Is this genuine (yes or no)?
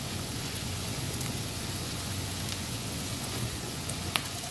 no